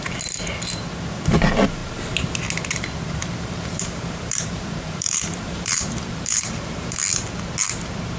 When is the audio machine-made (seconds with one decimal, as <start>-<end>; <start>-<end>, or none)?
3.2-7.0